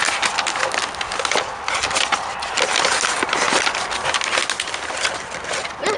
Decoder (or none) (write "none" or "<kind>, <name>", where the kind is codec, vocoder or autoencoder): none